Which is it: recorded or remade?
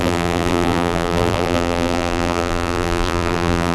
remade